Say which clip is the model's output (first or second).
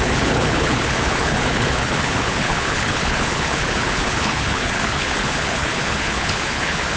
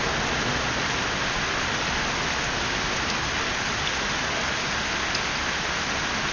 first